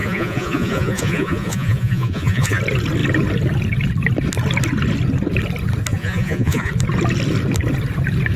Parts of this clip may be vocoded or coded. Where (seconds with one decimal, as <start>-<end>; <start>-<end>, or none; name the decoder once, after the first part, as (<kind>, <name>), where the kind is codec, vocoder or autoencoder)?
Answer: 0.0-2.6 (vocoder, Vocos); 5.9-6.7